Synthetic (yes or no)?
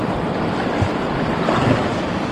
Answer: yes